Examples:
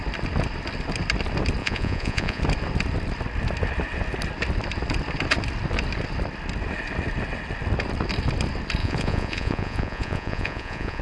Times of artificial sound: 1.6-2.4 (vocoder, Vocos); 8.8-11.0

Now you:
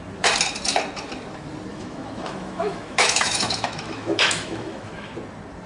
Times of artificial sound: 1.7-5.1 (autoencoder, DAC-VAE)

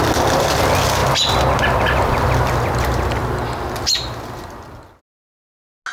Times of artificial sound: none

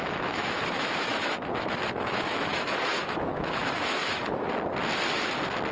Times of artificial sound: 0.0-4.5 (autoencoder, DAC-VAE)

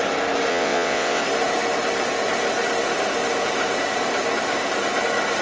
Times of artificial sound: 0.5-1.2 (vocoder, WaveNeXt)